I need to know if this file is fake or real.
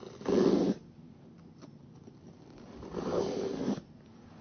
real